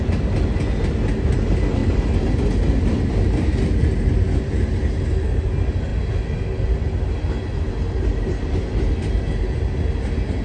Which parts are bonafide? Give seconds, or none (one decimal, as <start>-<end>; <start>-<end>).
0.0-10.4